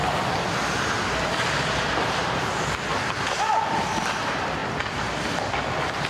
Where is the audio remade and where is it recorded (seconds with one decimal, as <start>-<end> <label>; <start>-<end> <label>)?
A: 0.0-6.1 recorded

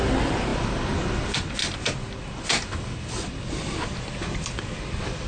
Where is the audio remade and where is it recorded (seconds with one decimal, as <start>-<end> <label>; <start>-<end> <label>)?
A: 0.0-5.3 recorded

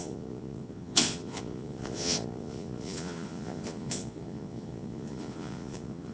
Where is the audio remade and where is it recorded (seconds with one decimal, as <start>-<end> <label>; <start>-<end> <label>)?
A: 0.0-6.1 remade

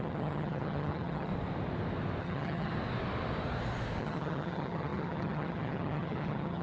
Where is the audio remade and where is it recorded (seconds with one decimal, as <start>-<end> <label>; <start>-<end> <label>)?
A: 0.0-1.3 remade; 1.3-2.2 recorded; 2.2-2.7 remade; 2.7-4.0 recorded; 4.0-6.6 remade

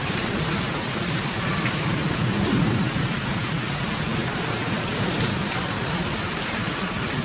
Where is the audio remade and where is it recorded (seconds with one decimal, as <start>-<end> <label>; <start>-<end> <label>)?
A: 0.0-7.2 recorded

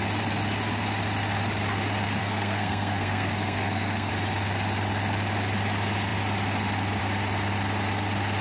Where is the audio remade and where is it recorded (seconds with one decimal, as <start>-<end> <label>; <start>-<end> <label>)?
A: 0.0-2.2 recorded; 2.2-4.1 remade; 4.1-8.4 recorded